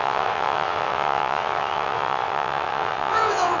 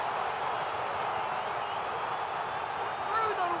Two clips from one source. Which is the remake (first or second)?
first